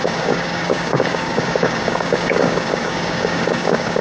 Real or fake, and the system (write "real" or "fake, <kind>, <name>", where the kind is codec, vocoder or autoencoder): fake, codec, DAC